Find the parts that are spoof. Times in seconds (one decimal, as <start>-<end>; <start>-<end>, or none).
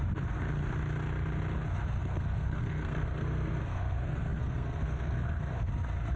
2.0-5.7